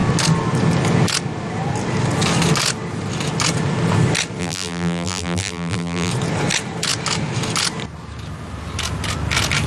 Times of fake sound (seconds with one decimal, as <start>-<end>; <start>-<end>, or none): 4.4-6.1